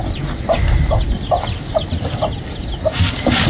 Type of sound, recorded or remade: recorded